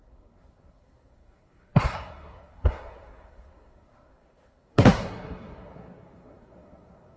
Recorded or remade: remade